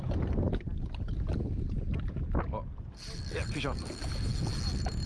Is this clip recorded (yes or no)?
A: yes